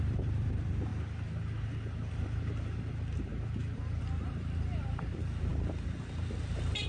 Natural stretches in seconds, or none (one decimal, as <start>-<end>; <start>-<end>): 0.9-2.1; 3.3-4.0